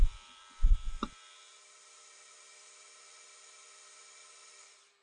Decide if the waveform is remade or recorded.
remade